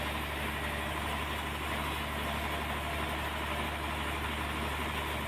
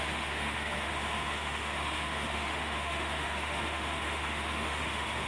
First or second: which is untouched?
first